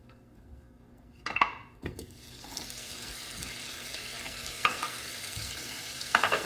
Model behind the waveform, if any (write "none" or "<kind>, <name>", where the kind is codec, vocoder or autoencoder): codec, SNAC